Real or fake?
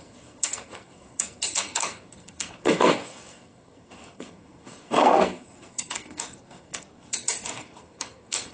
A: fake